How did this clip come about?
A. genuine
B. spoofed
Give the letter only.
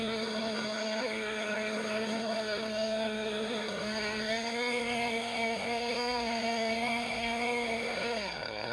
B